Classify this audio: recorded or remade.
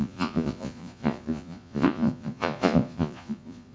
remade